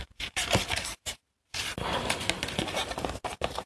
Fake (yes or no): yes